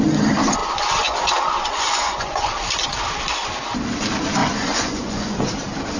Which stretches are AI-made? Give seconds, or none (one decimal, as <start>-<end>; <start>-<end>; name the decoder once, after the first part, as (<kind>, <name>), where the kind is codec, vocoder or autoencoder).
0.6-2.5 (vocoder, Vocos); 4.4-5.4